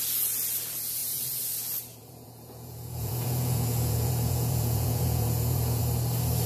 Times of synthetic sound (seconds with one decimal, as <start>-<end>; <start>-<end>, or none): 1.9-5.8